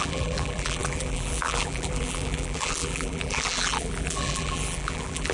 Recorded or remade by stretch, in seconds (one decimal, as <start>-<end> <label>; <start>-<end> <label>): 0.0-5.3 remade